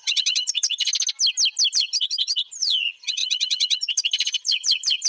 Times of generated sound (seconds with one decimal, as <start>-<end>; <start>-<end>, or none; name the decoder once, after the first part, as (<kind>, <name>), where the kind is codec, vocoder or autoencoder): 0.0-0.9 (vocoder, HiFi-GAN); 1.7-5.1